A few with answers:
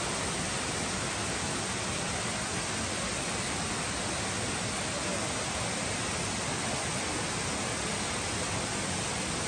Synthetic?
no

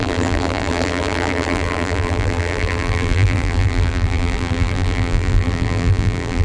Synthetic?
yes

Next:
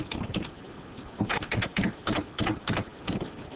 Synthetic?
yes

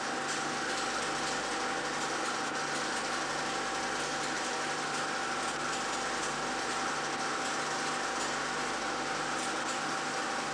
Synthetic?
no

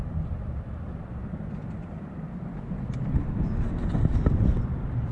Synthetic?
yes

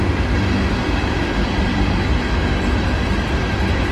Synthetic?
no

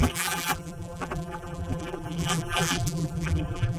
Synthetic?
yes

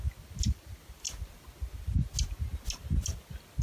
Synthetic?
no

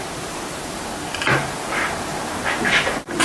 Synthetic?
yes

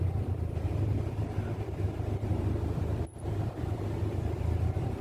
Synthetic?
yes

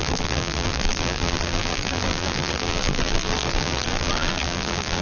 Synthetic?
yes